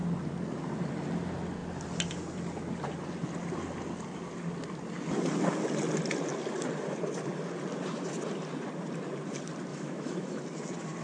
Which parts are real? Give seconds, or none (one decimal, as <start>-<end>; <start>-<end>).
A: 0.0-9.7; 10.4-11.0